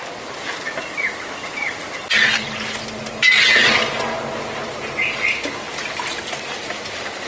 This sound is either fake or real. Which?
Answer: real